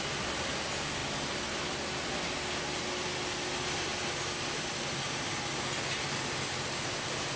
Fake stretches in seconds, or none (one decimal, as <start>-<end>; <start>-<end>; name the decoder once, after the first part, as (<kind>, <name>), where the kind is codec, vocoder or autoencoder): none